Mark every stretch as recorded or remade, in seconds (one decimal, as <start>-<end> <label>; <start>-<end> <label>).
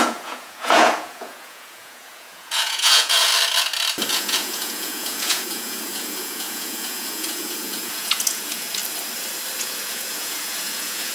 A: 0.0-3.3 remade; 3.3-4.1 recorded; 4.1-8.8 remade; 8.8-9.6 recorded; 9.6-11.1 remade